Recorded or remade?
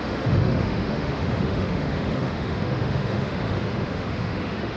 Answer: remade